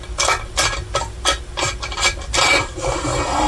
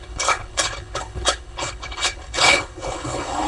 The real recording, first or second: first